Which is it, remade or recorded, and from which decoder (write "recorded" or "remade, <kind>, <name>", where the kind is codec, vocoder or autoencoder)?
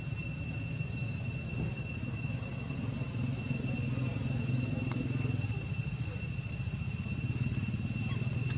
recorded